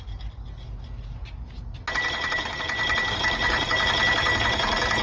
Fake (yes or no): no